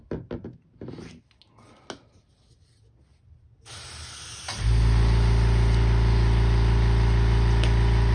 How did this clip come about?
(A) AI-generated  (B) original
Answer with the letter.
B